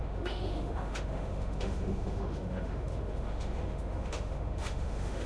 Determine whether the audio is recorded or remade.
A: remade